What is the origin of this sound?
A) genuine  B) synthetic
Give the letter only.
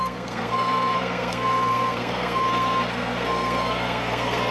B